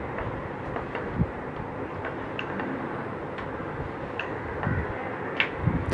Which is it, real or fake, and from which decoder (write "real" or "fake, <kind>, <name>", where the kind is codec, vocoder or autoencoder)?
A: real